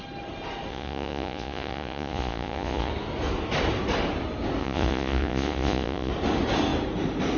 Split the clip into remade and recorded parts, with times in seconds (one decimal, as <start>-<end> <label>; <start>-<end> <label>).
0.0-0.7 recorded; 0.7-2.9 remade; 2.9-4.6 recorded; 4.6-6.1 remade; 6.1-7.4 recorded